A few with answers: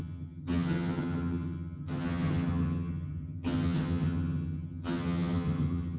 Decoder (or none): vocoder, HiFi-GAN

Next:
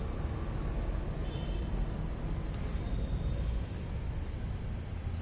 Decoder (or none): none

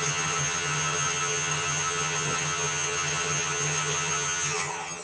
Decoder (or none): vocoder, HiFi-GAN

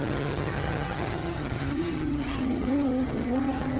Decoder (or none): vocoder, HiFi-GAN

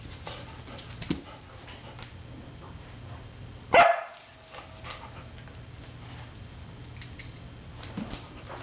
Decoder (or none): none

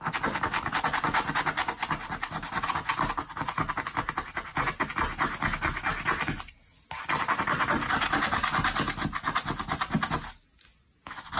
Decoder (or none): none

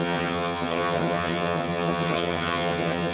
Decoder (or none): vocoder, HiFi-GAN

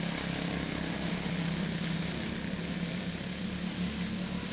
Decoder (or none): none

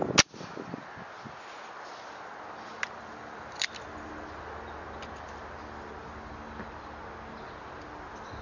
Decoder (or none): none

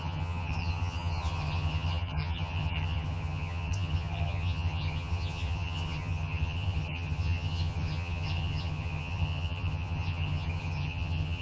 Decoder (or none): vocoder, HiFi-GAN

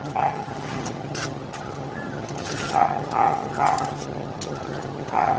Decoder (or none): vocoder, HiFi-GAN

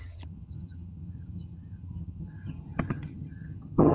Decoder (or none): vocoder, HiFi-GAN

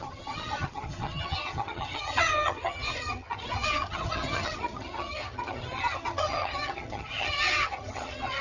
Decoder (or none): vocoder, HiFi-GAN